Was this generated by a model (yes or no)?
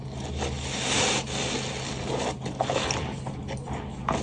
no